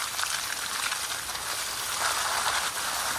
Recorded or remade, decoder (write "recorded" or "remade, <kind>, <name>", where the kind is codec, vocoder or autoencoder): recorded